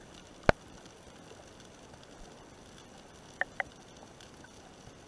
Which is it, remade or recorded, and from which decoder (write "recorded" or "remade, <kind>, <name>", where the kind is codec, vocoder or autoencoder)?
recorded